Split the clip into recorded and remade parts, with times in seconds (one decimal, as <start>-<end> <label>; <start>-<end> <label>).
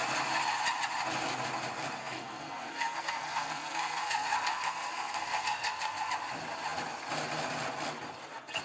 0.0-2.0 recorded; 2.0-6.1 remade; 6.1-8.6 recorded